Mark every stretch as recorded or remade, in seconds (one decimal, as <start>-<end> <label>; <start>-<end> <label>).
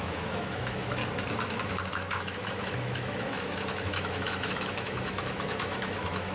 0.0-1.0 remade; 1.0-1.9 recorded; 1.9-6.3 remade